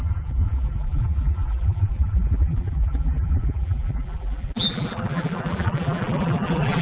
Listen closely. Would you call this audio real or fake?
fake